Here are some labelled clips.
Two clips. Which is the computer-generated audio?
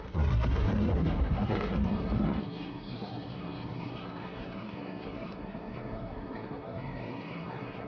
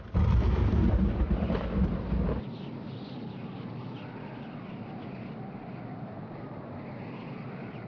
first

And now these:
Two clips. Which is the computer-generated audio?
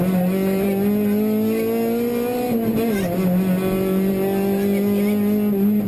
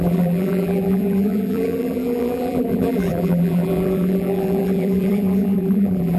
second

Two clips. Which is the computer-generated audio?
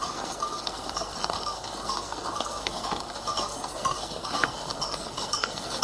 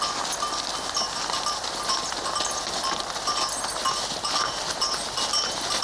first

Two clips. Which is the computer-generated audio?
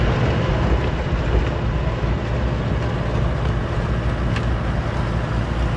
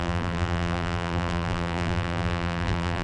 second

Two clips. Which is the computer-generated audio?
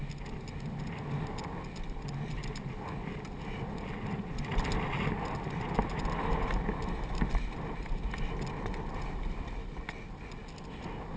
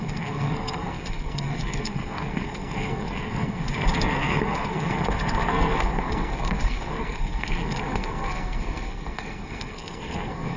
second